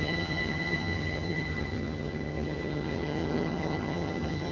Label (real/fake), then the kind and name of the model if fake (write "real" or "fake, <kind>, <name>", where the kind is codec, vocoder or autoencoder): fake, vocoder, HiFi-GAN